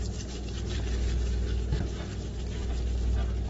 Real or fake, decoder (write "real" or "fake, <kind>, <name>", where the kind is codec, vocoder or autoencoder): real